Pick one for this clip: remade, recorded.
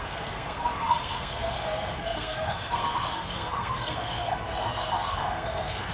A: remade